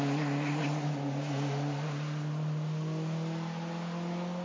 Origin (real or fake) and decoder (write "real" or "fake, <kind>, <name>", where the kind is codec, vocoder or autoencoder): real